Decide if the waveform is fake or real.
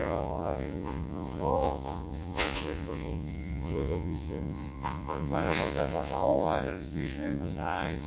fake